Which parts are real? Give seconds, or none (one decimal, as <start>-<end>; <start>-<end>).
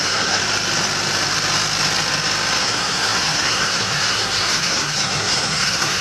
0.4-2.6